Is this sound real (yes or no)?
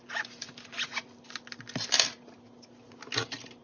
yes